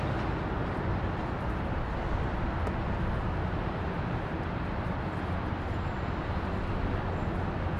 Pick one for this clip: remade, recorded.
recorded